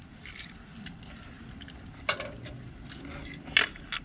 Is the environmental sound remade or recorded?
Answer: recorded